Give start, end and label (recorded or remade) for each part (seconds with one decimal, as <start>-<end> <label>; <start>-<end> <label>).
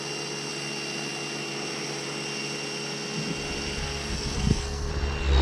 0.0-3.8 recorded; 3.8-4.9 remade; 4.9-5.4 recorded